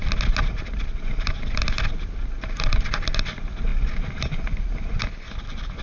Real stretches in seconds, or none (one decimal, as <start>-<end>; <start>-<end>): 0.0-5.8